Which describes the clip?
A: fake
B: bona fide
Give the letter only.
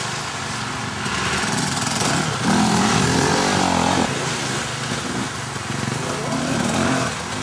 B